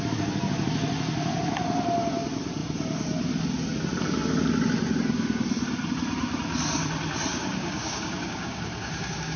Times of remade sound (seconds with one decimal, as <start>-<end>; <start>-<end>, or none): 7.3-9.4